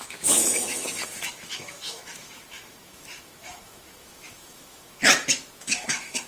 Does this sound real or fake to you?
fake